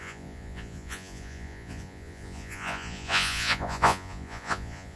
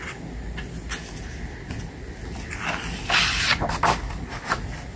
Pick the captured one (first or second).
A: second